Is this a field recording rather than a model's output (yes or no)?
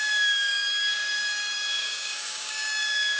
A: no